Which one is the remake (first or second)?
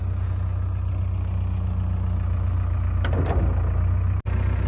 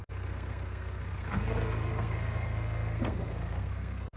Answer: second